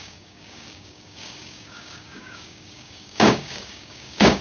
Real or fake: fake